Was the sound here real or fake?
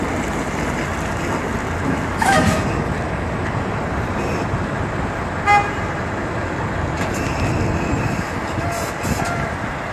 real